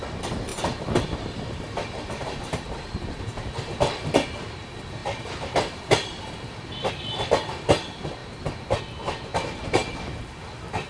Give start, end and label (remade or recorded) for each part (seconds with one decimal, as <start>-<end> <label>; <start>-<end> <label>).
0.0-0.5 recorded; 0.5-3.5 remade; 3.5-5.0 recorded; 5.0-6.9 remade; 6.9-8.2 recorded; 8.2-8.8 remade; 8.8-9.3 recorded; 9.3-9.9 remade; 9.9-10.9 recorded